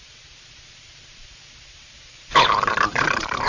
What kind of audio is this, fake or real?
fake